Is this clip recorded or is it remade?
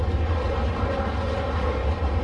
recorded